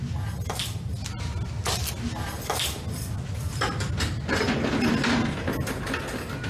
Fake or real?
real